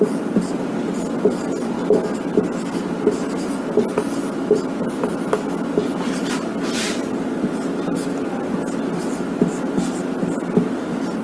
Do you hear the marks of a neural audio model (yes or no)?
no